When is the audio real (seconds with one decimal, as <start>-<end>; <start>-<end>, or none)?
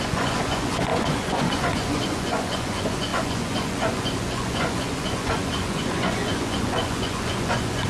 none